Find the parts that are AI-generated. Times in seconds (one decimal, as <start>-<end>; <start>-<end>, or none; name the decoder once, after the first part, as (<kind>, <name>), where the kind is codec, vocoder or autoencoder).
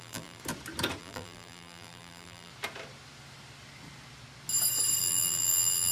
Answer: 0.0-0.4 (vocoder, BigVGAN v2); 1.0-2.5; 5.0-5.9